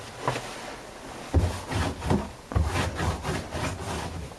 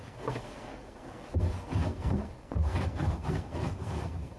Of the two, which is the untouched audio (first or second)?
first